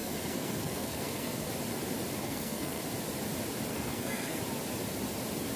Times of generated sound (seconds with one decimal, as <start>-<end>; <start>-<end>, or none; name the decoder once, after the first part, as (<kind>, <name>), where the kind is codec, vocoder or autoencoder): 0.0-1.5 (codec, SNAC); 2.2-2.8; 3.7-4.4